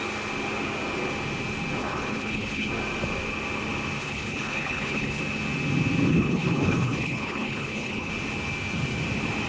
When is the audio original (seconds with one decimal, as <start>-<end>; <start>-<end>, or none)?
0.0-1.8; 2.7-4.0; 5.2-6.1; 8.1-9.5